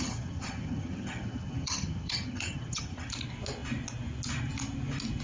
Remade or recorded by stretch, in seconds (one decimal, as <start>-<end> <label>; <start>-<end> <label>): 0.0-3.1 remade; 3.1-5.2 recorded